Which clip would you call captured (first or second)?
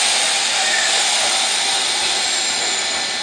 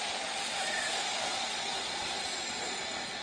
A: first